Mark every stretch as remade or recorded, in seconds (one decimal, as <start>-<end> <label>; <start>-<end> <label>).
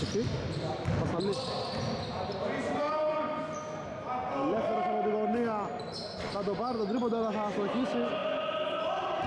0.0-9.3 recorded